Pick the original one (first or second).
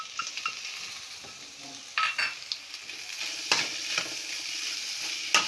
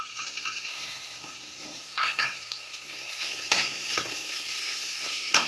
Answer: first